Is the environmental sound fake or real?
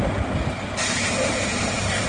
real